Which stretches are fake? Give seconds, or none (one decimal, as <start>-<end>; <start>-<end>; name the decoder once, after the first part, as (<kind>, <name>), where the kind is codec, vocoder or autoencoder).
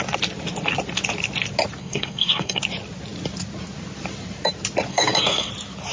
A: 1.8-2.6 (codec, SNAC); 4.9-5.5